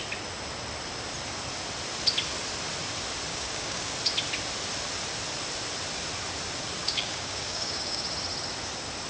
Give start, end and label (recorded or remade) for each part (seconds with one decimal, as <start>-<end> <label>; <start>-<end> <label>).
0.0-3.3 recorded; 3.3-3.9 remade; 3.9-6.8 recorded; 6.8-8.0 remade; 8.0-9.1 recorded